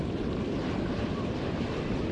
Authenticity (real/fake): fake